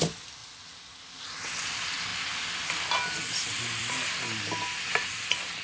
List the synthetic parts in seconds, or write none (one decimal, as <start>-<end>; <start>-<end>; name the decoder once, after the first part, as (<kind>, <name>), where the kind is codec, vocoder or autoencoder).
none